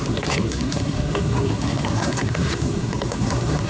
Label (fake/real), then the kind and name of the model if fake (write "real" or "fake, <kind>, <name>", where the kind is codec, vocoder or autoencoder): fake, codec, SNAC